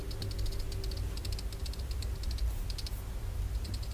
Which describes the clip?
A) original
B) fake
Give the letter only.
A